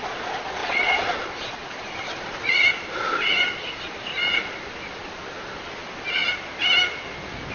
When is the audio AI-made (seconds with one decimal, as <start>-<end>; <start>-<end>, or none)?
0.0-6.2